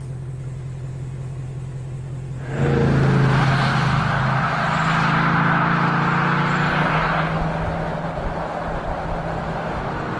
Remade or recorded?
recorded